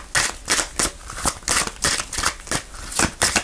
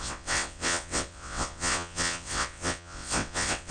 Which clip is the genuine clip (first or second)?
first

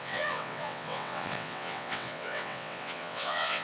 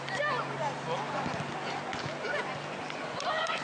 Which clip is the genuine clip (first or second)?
second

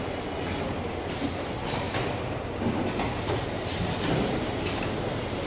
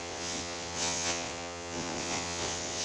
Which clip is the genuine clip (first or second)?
first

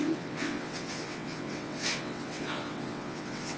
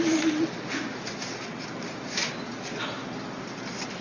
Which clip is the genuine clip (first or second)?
second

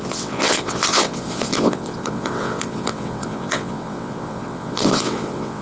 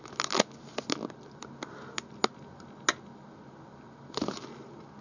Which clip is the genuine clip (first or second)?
second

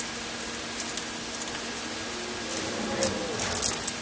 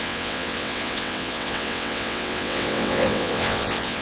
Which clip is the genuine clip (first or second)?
first